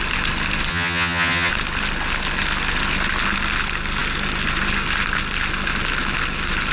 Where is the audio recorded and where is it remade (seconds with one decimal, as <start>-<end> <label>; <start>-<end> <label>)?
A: 0.0-0.7 recorded; 0.7-1.5 remade; 1.5-6.7 recorded